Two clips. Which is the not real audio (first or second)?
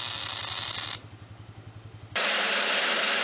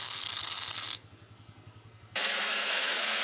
second